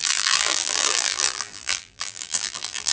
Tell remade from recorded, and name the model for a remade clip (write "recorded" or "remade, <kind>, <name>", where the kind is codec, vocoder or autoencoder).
remade, vocoder, BigVGAN v2